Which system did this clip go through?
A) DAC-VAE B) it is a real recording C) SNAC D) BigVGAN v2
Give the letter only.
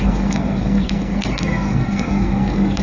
C